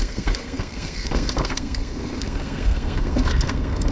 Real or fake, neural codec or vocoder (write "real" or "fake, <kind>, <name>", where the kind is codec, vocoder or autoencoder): fake, codec, SNAC